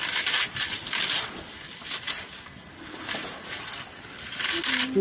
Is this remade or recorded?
recorded